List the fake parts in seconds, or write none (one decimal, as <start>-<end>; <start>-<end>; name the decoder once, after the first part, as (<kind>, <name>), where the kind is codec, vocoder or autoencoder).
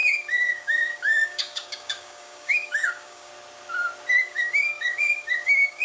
0.0-3.3 (codec, DAC); 4.2-5.8